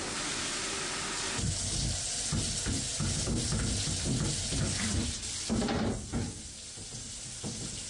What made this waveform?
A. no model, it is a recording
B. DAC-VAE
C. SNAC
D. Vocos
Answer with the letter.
A